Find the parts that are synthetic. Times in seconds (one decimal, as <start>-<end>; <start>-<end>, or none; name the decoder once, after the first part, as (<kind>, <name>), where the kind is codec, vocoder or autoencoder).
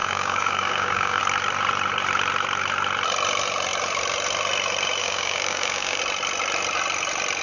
0.0-1.2 (codec, DAC); 5.0-6.0